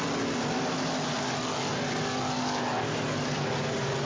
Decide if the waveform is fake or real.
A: real